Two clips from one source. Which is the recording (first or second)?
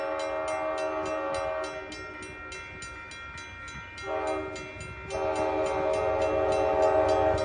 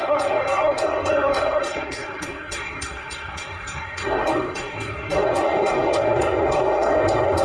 first